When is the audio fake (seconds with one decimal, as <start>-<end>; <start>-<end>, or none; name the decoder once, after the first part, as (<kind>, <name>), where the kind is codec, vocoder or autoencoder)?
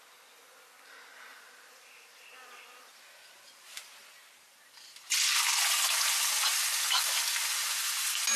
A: 1.3-5.3 (vocoder, BigVGAN v2)